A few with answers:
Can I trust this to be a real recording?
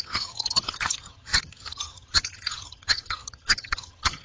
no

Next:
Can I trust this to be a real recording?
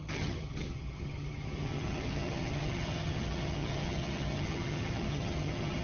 no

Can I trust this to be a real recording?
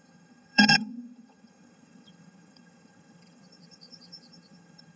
no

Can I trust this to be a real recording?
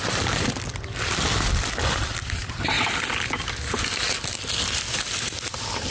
yes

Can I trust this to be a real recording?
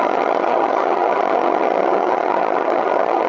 no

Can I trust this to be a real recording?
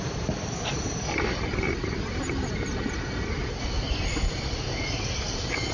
yes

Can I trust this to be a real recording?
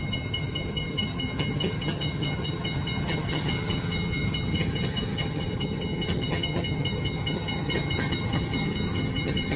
no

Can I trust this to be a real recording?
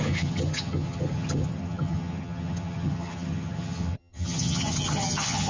no